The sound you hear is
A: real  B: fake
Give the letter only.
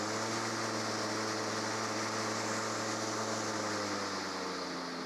A